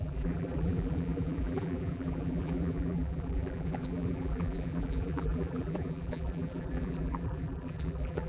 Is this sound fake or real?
fake